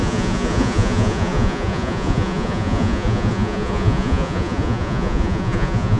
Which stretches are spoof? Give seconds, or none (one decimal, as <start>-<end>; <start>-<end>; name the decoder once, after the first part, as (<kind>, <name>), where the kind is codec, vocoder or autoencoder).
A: 0.0-6.0 (vocoder, Vocos)